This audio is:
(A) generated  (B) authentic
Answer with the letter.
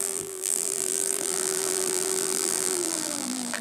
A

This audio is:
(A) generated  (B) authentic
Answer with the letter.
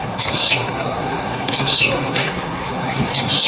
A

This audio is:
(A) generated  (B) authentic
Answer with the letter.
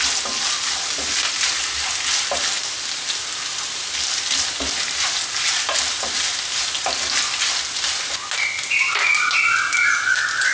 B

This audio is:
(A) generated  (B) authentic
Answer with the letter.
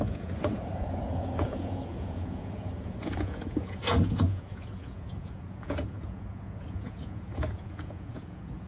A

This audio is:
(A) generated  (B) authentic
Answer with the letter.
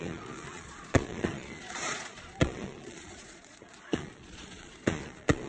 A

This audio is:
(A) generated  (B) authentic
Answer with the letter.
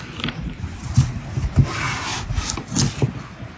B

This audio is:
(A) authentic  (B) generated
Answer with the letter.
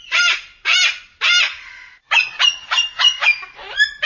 A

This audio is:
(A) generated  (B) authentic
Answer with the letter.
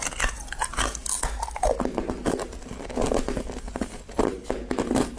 B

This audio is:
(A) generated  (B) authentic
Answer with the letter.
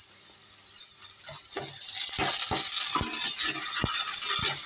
B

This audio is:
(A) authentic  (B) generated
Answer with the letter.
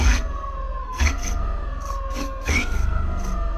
B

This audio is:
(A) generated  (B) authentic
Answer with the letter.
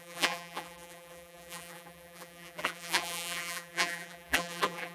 A